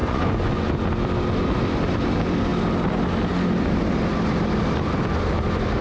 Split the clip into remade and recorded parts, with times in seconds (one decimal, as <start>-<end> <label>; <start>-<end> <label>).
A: 0.0-0.7 remade; 0.7-5.8 recorded